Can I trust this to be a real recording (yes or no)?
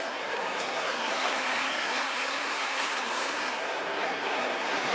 no